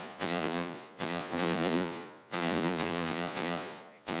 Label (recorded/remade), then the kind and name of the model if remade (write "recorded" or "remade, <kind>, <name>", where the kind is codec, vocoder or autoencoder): remade, vocoder, Vocos